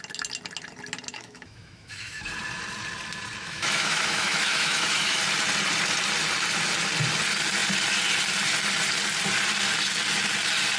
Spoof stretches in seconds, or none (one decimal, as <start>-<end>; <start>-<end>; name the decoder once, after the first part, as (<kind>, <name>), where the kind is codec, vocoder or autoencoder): 1.1-2.2 (autoencoder, DAC-VAE); 3.4-5.2